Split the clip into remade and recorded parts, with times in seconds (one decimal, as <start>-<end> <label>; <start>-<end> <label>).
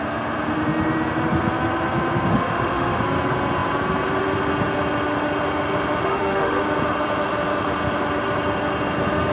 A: 0.0-2.3 recorded; 2.3-3.0 remade; 3.0-6.0 recorded; 6.0-6.6 remade; 6.6-9.3 recorded